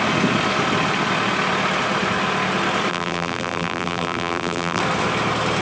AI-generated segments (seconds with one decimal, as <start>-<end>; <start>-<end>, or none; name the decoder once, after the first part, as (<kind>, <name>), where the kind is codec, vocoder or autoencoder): 2.9-4.8 (vocoder, BigVGAN v2)